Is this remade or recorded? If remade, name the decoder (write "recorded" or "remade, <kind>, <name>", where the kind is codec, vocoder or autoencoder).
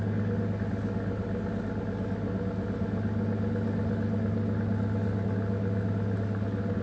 recorded